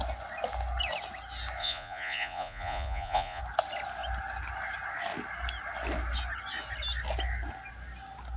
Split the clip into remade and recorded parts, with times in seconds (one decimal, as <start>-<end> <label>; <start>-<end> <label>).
0.0-1.6 recorded; 1.6-3.4 remade; 3.4-8.4 recorded